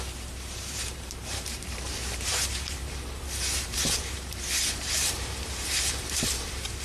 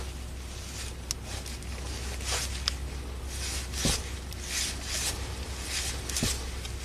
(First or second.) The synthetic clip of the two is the first